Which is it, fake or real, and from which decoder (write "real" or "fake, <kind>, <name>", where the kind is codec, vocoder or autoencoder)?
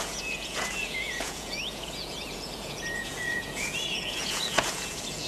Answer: fake, vocoder, Vocos